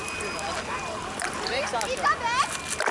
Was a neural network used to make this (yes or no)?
no